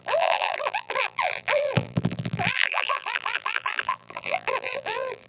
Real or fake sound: fake